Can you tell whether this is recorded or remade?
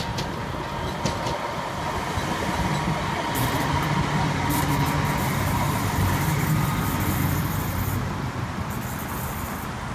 recorded